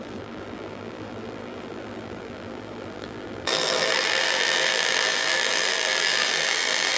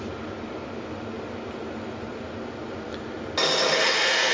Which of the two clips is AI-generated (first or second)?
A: first